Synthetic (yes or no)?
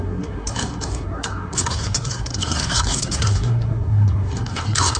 yes